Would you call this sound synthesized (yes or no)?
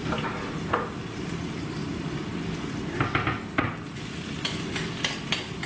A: no